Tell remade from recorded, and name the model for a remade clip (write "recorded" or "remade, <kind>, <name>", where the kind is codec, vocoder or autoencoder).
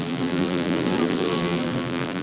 remade, vocoder, BigVGAN v2